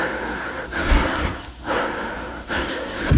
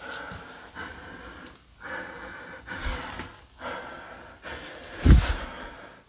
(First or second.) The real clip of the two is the second